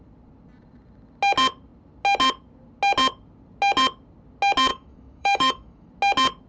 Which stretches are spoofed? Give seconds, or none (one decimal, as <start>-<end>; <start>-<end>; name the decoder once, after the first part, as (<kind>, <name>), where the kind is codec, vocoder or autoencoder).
4.7-5.9 (autoencoder, DAC-VAE)